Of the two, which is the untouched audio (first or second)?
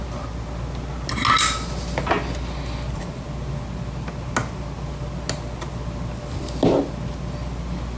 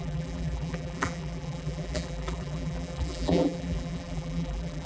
first